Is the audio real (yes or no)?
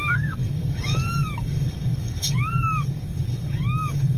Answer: no